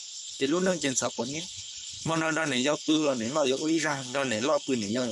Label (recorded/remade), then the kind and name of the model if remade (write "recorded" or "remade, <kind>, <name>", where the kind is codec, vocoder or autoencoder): remade, codec, HILCodec